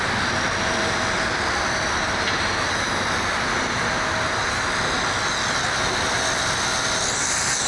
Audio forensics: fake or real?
real